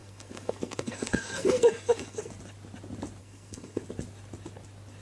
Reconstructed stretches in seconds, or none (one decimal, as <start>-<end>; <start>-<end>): 0.0-2.3; 3.2-3.8